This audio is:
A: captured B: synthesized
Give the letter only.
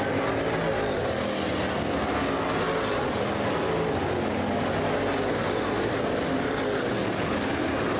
A